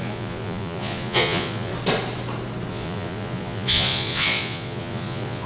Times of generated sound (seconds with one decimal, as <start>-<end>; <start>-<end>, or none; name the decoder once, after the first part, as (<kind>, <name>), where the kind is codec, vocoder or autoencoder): 0.0-1.7 (vocoder, Vocos); 2.7-5.5